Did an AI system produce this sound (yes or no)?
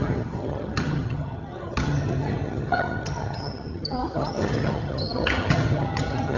yes